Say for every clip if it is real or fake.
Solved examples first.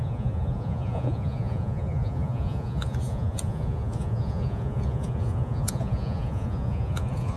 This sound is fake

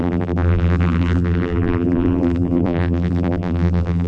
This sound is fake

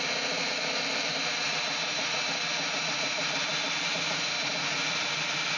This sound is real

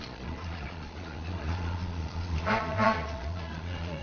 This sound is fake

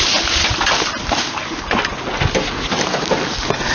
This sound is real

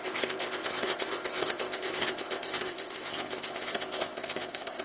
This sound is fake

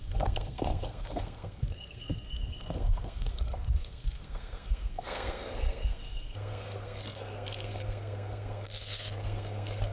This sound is fake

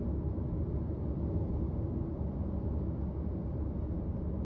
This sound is real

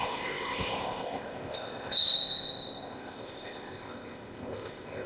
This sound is fake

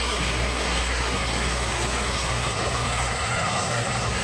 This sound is fake